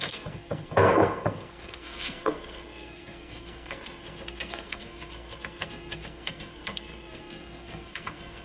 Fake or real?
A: fake